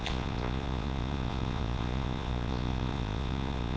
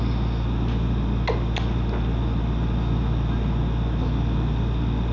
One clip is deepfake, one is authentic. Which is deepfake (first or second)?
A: first